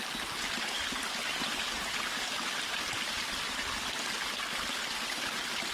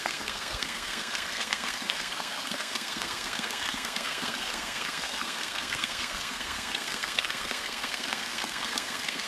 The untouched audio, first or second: first